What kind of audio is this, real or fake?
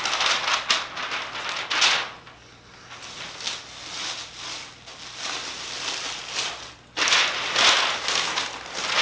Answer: real